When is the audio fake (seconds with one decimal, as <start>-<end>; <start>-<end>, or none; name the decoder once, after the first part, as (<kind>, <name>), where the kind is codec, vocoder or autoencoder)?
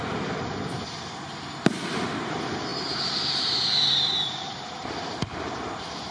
0.0-6.1 (vocoder, BigVGAN v2)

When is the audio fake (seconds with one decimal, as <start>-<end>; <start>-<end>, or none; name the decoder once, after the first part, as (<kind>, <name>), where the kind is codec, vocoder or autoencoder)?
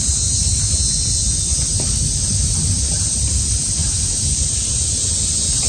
3.8-5.1 (vocoder, BigVGAN v2)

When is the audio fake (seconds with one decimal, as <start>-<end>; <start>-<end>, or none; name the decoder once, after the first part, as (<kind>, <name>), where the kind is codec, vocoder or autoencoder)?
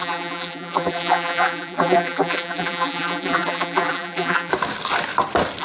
0.0-4.5 (vocoder, BigVGAN v2)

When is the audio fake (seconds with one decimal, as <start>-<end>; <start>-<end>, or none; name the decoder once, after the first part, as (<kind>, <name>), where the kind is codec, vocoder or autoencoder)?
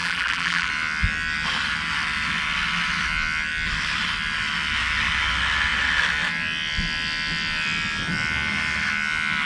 0.0-0.7 (vocoder, BigVGAN v2)